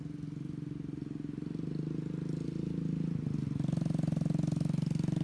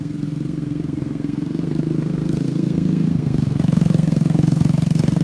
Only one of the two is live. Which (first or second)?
first